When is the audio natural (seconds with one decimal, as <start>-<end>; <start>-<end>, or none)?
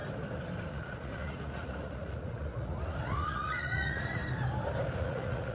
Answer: 0.0-0.7; 4.2-5.0